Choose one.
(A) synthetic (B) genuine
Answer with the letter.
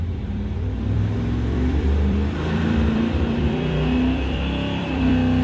A